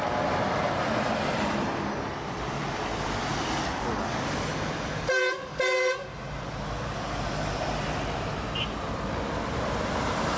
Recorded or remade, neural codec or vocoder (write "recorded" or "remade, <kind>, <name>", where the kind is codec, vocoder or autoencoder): remade, vocoder, BigVGAN v2